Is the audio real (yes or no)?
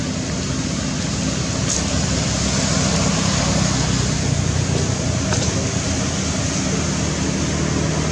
yes